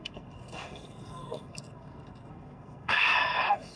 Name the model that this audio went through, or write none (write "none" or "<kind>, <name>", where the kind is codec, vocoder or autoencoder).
codec, SNAC